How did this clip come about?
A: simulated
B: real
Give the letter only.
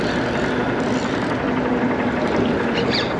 B